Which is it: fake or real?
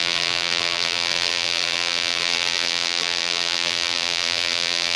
fake